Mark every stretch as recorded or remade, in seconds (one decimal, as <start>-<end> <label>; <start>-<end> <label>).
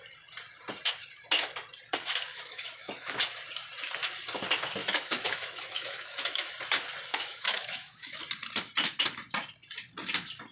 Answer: 0.0-2.3 recorded; 2.3-3.1 remade; 3.1-4.8 recorded; 4.8-6.5 remade; 6.5-7.1 recorded; 7.1-8.2 remade; 8.2-10.5 recorded